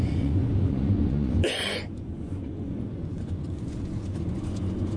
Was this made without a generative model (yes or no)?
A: no